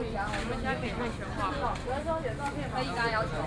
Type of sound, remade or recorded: recorded